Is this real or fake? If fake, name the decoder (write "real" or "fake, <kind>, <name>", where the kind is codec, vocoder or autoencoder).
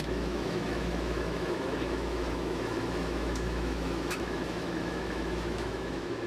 fake, autoencoder, DAC-VAE